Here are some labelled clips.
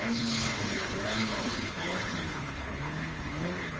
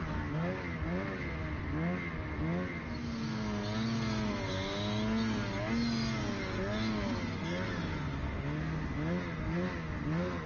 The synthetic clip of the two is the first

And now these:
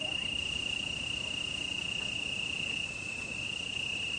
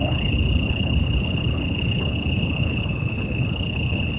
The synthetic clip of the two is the second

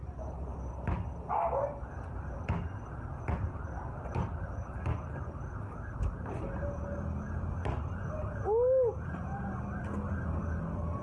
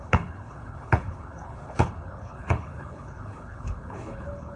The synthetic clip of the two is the second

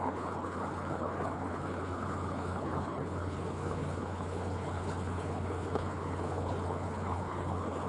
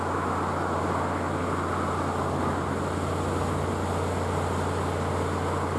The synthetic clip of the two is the first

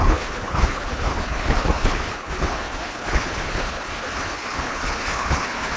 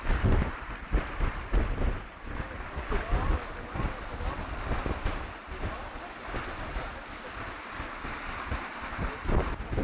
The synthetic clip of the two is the first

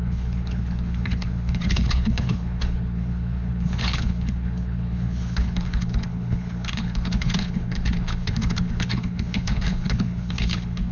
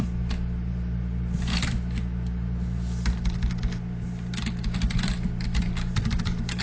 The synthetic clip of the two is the first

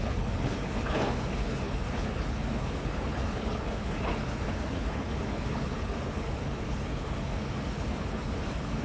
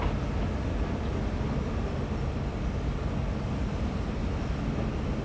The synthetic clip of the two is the first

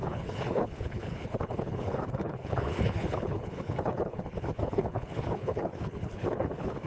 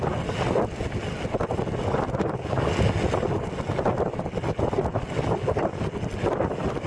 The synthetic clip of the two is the first